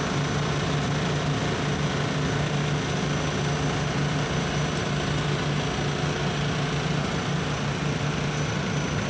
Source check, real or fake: real